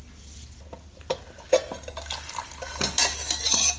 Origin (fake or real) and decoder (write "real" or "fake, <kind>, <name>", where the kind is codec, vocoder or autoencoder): real